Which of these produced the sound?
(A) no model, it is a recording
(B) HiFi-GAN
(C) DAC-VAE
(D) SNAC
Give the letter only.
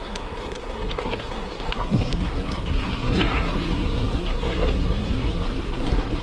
D